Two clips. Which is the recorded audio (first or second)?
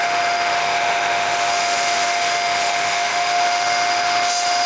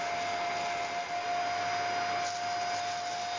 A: second